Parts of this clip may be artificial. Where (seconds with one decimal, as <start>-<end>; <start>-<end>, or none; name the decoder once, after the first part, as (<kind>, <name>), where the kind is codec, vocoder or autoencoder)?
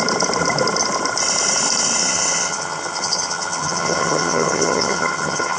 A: 2.0-5.6 (vocoder, HiFi-GAN)